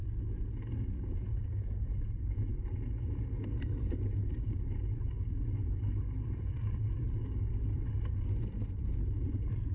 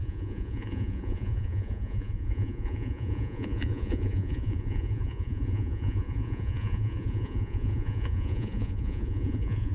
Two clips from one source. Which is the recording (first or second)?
first